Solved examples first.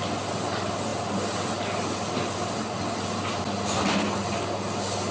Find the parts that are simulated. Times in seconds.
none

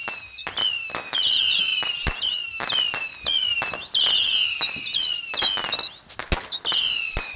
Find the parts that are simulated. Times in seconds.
none